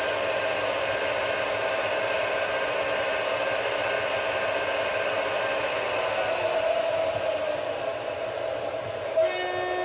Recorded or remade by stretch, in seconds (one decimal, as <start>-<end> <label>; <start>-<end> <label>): 0.0-9.8 recorded